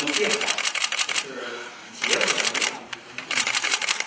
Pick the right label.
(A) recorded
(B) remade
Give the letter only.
B